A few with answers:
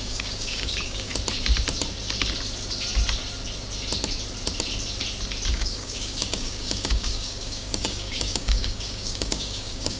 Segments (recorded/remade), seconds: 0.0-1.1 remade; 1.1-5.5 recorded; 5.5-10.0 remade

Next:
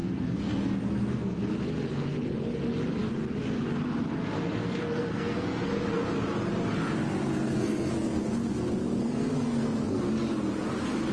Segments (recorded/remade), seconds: 0.0-1.4 remade; 1.4-4.2 recorded; 4.2-6.0 remade; 6.0-7.3 recorded; 7.3-8.2 remade; 8.2-8.8 recorded; 8.8-10.0 remade; 10.0-11.1 recorded

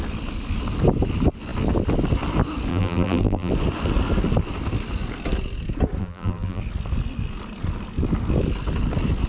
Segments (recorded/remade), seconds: 0.0-2.7 recorded; 2.7-3.5 remade; 3.5-6.0 recorded; 6.0-6.6 remade; 6.6-9.3 recorded

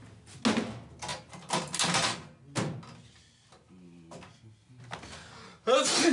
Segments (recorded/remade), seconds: 0.0-6.1 recorded

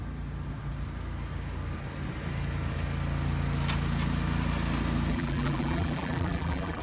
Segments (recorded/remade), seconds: 0.0-5.1 recorded; 5.1-6.8 remade